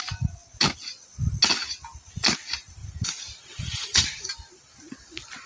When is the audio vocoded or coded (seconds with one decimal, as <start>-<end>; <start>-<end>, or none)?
2.8-4.3